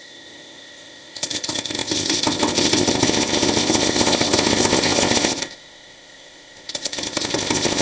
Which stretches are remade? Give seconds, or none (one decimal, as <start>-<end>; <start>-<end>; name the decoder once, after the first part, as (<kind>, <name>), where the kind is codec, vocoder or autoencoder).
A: 0.0-7.8 (codec, ZipCodec)